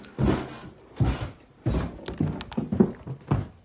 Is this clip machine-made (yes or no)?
no